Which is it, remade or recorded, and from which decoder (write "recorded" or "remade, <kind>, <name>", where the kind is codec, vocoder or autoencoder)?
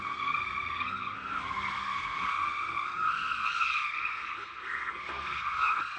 remade, codec, SNAC